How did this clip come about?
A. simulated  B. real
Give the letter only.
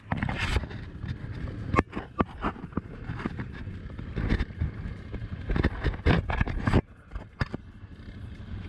B